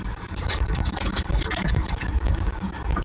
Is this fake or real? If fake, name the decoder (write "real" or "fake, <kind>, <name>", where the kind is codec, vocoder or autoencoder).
fake, codec, DAC